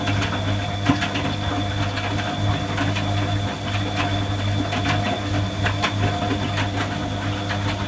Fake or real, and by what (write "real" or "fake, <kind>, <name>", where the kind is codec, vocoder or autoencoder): real